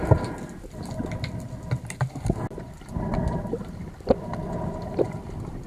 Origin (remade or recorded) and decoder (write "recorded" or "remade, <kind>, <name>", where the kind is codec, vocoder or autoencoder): recorded